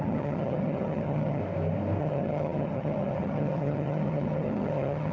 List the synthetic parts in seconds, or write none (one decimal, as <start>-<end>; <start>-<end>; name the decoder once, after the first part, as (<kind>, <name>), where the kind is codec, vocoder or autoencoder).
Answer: 0.0-1.4 (vocoder, HiFi-GAN); 2.0-5.1